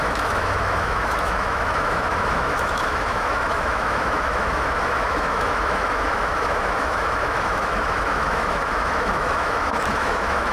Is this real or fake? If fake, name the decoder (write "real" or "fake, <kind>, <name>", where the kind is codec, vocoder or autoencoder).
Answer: fake, autoencoder, DAC-VAE